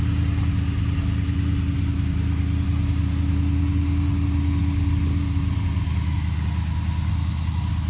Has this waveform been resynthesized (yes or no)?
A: no